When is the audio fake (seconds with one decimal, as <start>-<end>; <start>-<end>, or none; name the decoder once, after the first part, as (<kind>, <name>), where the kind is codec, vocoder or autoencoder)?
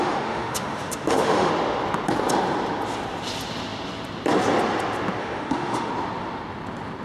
0.0-1.5 (autoencoder, DAC-VAE); 5.2-5.9